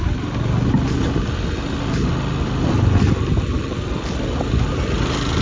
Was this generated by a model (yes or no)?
no